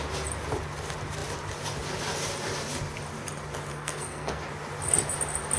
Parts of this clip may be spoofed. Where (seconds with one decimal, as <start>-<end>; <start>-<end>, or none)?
3.7-4.4